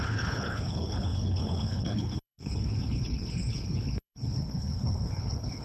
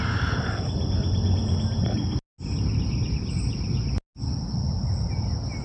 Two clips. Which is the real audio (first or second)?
second